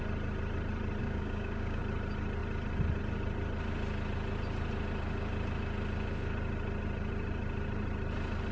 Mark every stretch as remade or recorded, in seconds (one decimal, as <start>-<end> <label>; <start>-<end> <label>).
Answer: 0.0-1.0 recorded; 1.0-1.8 remade; 1.8-8.5 recorded